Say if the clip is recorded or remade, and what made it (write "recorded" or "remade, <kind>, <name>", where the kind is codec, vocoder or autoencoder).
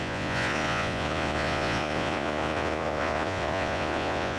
remade, vocoder, Vocos